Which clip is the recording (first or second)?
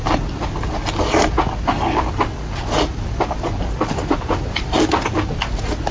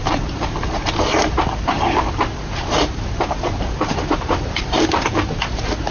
first